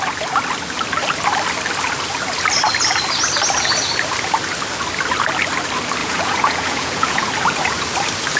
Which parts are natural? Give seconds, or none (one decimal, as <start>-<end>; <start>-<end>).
0.0-6.0; 7.3-8.4